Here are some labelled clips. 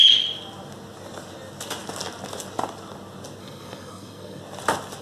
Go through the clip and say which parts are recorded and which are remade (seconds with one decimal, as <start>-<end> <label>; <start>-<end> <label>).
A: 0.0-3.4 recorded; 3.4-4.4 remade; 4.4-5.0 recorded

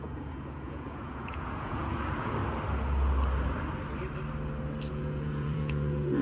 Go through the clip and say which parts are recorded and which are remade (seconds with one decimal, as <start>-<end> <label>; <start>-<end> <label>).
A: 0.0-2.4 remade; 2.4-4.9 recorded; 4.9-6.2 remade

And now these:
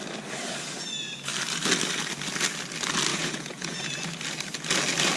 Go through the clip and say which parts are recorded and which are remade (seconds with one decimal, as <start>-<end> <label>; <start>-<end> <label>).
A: 0.0-3.1 recorded; 3.1-3.9 remade; 3.9-5.2 recorded

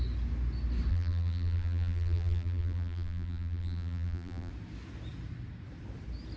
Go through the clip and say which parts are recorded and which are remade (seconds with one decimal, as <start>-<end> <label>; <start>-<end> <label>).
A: 0.0-0.9 recorded; 0.9-4.5 remade; 4.5-6.4 recorded

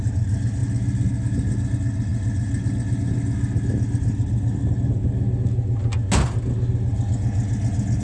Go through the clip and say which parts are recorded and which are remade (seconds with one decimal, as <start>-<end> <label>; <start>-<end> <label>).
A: 0.0-8.0 recorded

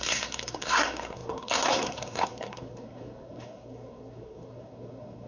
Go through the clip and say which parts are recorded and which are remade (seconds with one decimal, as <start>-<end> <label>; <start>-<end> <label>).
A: 0.0-5.3 remade

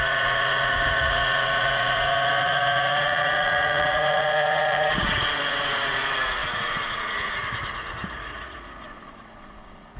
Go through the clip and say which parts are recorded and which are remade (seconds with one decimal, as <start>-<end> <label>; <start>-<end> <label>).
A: 0.0-10.0 remade

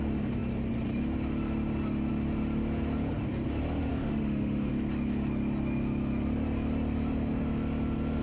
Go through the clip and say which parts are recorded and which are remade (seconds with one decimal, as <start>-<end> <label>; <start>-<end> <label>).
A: 0.0-3.9 recorded; 3.9-4.7 remade; 4.7-8.2 recorded